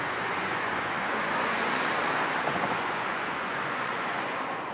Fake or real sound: fake